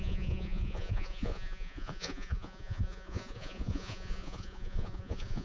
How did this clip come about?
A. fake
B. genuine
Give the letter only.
A